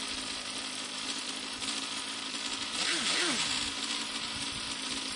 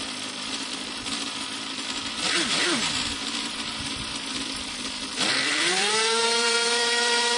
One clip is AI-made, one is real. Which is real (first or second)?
first